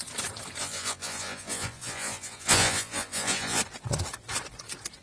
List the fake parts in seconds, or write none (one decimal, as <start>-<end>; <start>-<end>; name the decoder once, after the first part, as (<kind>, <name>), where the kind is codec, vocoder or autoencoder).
0.6-3.6 (vocoder, Vocos)